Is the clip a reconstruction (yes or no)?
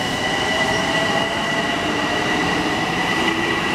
yes